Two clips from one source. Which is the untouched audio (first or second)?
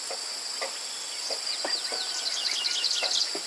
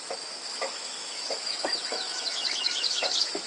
first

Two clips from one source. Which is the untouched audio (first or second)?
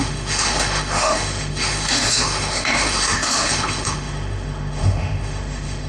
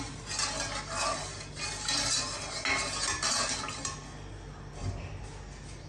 second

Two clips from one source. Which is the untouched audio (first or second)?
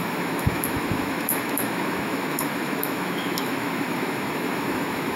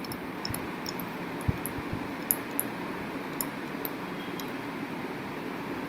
second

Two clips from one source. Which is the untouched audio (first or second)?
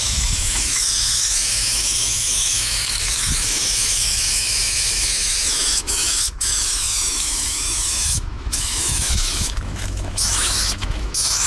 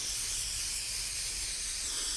second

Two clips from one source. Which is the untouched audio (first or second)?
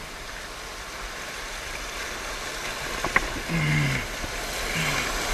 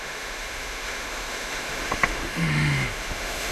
first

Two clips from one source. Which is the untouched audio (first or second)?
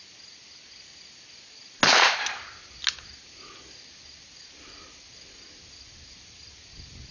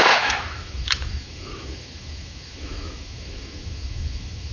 first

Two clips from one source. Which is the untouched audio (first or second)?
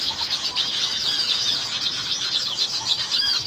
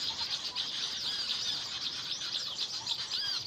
second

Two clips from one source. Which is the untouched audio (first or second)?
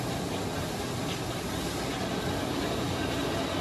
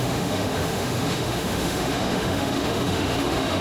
first